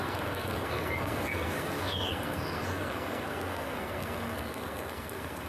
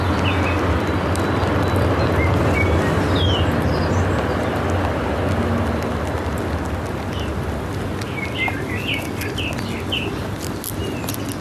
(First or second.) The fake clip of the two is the first